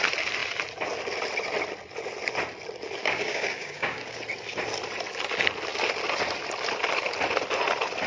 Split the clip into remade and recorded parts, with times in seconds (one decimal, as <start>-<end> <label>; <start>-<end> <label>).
0.0-3.0 recorded; 3.0-4.2 remade; 4.2-8.1 recorded